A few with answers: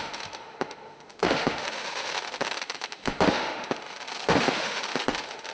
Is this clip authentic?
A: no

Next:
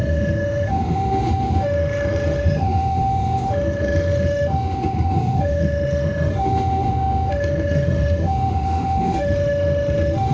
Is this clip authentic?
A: no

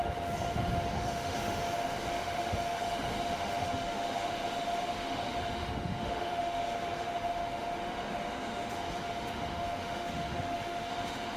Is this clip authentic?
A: no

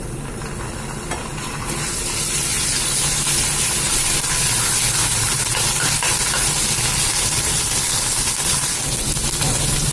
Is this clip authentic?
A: yes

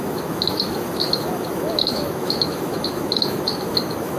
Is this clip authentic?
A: no